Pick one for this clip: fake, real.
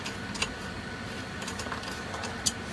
real